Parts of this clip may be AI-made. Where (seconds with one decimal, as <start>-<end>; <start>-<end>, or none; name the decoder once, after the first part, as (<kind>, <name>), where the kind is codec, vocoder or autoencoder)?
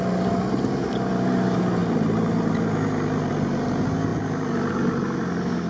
none